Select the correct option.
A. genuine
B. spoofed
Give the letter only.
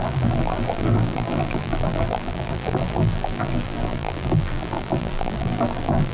B